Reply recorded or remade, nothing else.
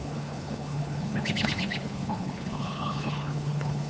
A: remade